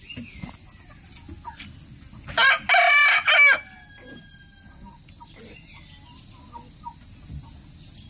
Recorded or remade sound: recorded